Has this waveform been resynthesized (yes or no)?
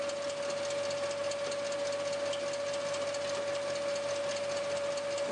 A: no